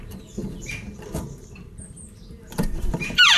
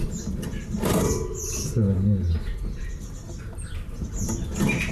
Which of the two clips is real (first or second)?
second